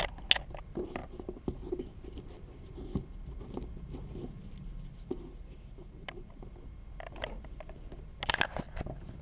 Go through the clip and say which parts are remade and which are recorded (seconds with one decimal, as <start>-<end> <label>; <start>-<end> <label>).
0.0-9.2 recorded

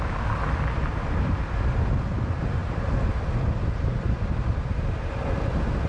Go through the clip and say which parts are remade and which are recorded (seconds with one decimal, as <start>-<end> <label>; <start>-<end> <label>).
0.0-5.9 recorded

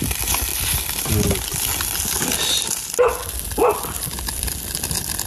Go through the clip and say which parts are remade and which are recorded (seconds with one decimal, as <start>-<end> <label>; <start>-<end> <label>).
0.0-5.3 recorded

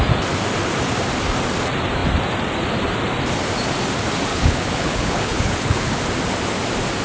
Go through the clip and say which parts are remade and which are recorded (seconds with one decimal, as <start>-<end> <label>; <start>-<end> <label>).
0.0-4.3 recorded; 4.3-6.0 remade; 6.0-7.0 recorded

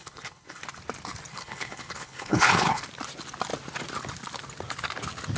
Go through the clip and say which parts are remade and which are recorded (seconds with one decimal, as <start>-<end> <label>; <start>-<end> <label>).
0.0-0.6 remade; 0.6-1.3 recorded; 1.3-2.8 remade; 2.8-5.4 recorded